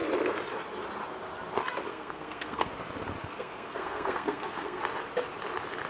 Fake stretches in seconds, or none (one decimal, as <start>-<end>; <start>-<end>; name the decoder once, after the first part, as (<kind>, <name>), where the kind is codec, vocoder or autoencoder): 1.9-2.7 (codec, SNAC); 3.2-4.8